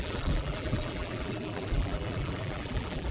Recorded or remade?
remade